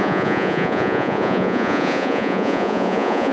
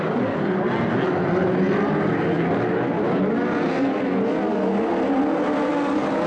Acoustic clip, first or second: second